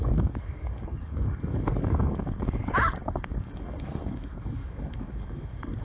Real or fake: fake